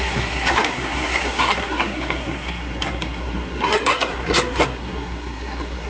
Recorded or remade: remade